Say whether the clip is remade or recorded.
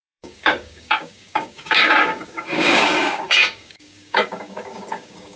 remade